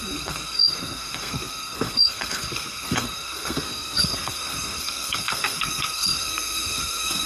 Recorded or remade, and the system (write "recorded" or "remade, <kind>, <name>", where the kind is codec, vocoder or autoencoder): remade, codec, SNAC